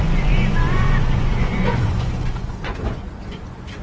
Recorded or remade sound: remade